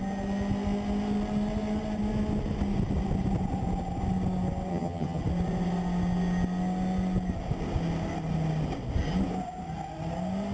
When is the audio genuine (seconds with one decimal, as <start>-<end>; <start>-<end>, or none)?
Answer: 0.0-4.7; 5.2-10.5